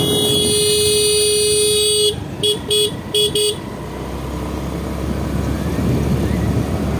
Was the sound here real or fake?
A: real